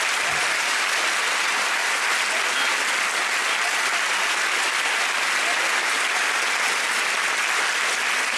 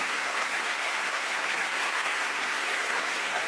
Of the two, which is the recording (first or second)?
first